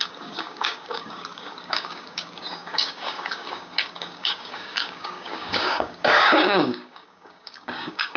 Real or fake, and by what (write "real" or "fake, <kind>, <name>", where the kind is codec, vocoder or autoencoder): fake, codec, DAC